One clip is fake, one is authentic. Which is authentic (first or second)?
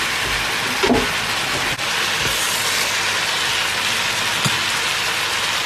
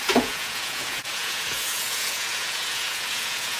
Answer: first